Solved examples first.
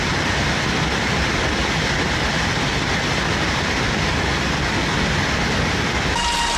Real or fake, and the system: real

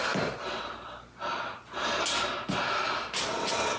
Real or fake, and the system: real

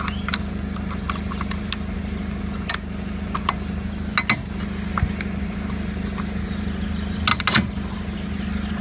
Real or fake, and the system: real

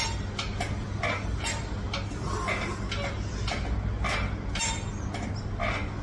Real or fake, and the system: real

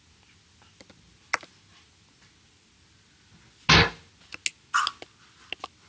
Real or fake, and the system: real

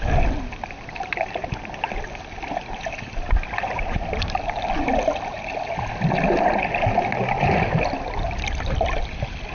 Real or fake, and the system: real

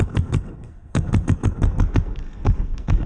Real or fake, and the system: fake, codec, SNAC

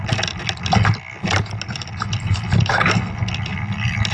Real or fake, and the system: real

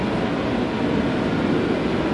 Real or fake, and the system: real